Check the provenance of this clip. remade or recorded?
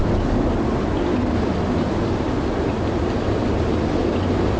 recorded